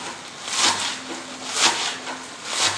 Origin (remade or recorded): recorded